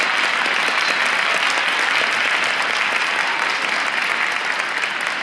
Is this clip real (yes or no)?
yes